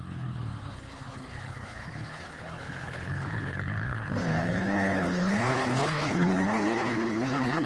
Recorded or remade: remade